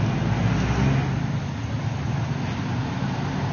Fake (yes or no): no